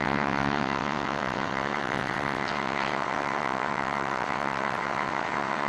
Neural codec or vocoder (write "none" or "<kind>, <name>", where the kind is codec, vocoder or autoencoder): vocoder, WaveNeXt